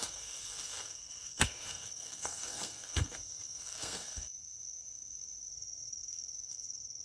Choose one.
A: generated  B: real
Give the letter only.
A